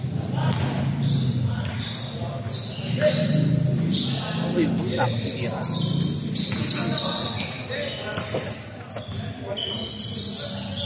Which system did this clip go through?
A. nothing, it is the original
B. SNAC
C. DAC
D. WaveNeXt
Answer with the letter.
A